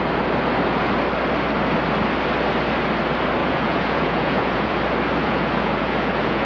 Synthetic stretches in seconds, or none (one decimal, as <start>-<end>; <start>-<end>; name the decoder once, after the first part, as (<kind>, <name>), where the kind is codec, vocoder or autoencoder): 3.4-4.8 (vocoder, Vocos); 5.2-6.5